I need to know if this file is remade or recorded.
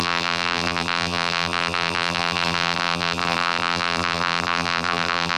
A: remade